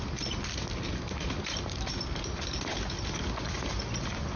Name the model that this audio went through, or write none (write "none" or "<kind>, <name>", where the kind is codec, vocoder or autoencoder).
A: none